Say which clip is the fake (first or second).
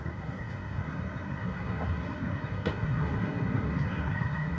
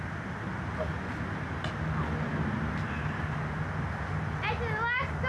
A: first